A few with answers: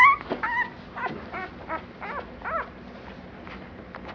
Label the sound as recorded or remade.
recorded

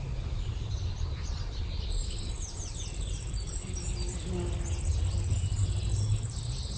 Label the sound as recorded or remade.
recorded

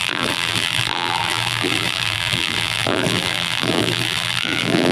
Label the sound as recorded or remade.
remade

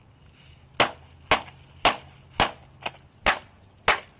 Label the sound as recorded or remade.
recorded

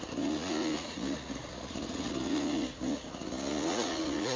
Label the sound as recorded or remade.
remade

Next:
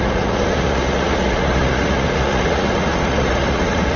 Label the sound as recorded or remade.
remade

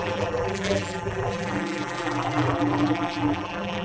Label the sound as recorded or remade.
remade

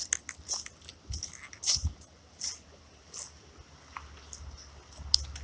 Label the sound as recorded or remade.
recorded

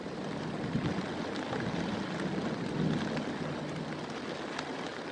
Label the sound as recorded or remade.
recorded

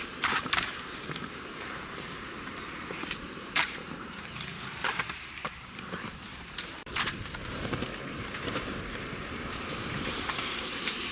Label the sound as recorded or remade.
remade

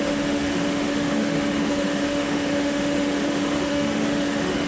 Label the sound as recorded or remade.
remade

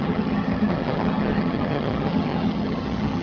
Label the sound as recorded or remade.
remade